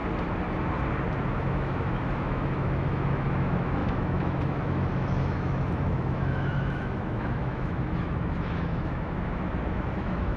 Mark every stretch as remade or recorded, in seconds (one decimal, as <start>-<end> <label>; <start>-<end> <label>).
0.0-1.3 recorded; 1.3-10.4 remade